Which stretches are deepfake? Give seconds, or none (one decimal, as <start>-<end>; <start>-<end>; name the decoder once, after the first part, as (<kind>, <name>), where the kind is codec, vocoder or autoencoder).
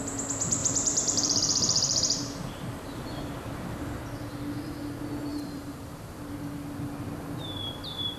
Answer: 0.6-4.0 (vocoder, BigVGAN v2); 5.3-6.2